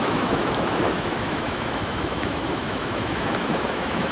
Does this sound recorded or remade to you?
remade